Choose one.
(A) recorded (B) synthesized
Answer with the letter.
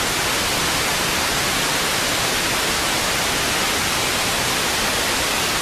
A